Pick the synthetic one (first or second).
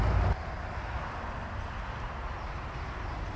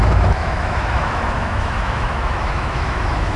second